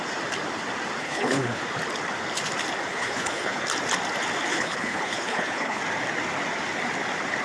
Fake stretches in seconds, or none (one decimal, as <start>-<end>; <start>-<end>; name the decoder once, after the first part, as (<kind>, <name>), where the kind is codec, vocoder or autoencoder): 1.0-1.6 (codec, HILCodec); 2.9-3.6; 4.5-5.8

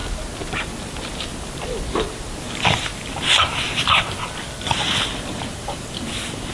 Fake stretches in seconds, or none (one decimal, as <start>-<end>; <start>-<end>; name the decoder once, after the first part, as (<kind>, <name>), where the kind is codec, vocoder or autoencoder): none

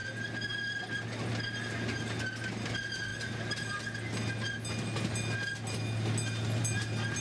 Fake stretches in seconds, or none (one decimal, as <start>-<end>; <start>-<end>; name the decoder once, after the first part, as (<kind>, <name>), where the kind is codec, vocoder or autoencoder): none

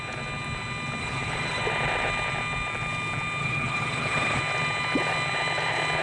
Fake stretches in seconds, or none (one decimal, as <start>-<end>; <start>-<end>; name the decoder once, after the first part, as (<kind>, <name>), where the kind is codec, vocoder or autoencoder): 1.0-1.6 (codec, HILCodec); 3.4-4.4

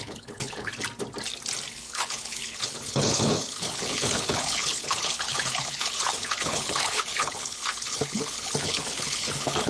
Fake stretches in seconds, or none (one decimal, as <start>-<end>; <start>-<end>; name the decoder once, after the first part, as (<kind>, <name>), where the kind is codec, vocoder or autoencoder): 0.0-0.7 (codec, HILCodec); 1.7-9.7

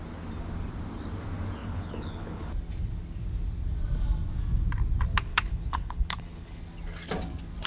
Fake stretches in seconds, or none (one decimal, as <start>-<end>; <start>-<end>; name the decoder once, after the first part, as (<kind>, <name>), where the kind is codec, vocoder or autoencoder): 1.6-2.5 (codec, HILCodec); 5.3-6.6